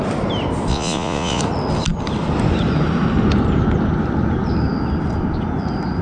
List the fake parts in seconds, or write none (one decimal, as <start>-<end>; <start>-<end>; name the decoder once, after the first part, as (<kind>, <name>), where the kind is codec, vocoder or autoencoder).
0.7-1.4 (vocoder, Vocos)